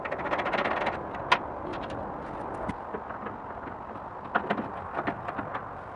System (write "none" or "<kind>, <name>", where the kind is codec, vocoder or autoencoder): none